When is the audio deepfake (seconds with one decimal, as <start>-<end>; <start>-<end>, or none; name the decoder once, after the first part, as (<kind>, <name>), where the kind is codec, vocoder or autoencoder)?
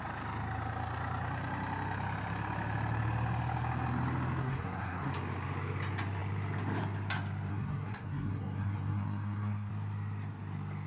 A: 4.4-5.1 (codec, SNAC); 7.5-9.7